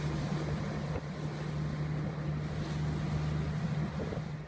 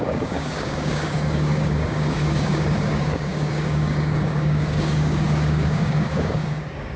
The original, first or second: first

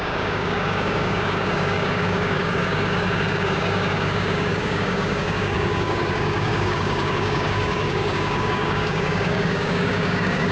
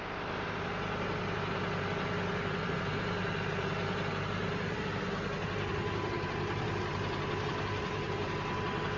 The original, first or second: second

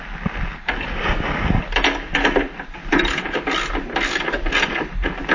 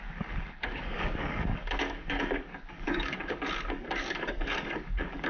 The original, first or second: first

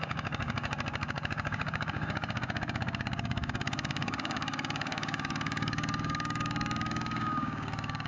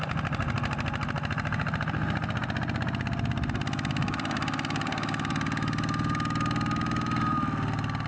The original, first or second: second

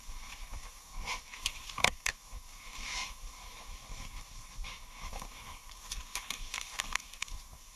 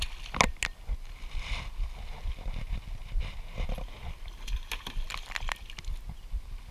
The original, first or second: second